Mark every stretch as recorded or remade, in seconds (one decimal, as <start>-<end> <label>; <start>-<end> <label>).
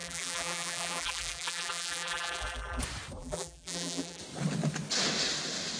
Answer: 0.0-2.8 remade; 2.8-3.2 recorded; 3.2-4.2 remade; 4.2-5.8 recorded